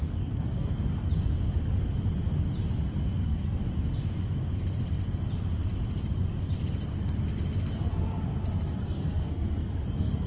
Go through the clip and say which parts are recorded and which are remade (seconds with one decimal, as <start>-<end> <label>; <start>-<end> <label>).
0.0-0.7 remade; 0.7-3.2 recorded; 3.2-3.6 remade; 3.6-7.6 recorded; 7.6-8.1 remade; 8.1-8.8 recorded; 8.8-10.3 remade